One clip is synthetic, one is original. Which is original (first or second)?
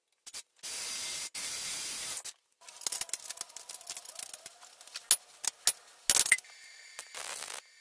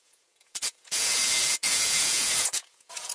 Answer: first